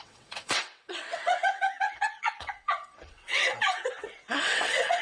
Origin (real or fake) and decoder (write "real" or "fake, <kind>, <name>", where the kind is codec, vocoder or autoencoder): fake, vocoder, WaveNeXt